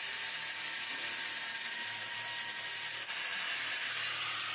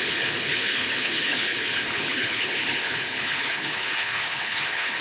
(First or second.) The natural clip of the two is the first